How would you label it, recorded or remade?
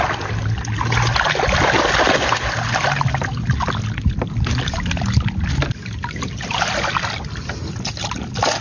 recorded